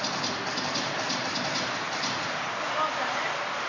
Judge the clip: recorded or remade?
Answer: recorded